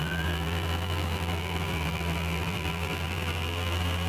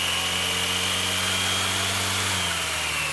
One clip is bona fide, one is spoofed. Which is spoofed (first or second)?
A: first